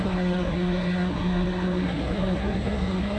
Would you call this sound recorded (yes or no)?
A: no